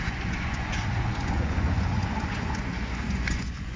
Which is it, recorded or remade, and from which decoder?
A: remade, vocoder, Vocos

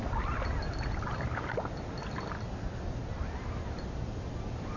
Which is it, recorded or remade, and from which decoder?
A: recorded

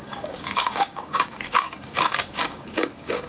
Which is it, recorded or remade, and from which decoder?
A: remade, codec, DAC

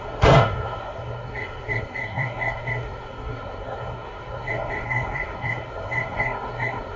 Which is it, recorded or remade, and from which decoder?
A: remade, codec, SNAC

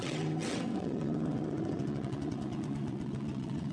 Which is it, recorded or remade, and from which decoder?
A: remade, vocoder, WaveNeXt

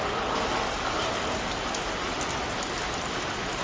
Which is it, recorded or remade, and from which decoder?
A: recorded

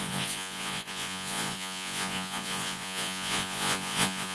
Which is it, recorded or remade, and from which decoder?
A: remade, vocoder, Vocos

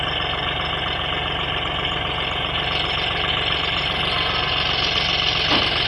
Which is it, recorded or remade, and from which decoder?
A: recorded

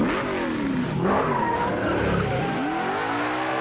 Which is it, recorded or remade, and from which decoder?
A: recorded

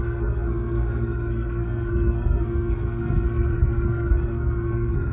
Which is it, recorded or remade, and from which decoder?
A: remade, codec, SNAC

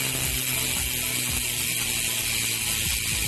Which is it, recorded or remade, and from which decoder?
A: recorded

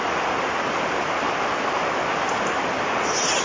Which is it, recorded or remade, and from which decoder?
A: recorded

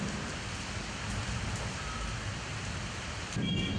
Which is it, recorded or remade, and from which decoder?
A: recorded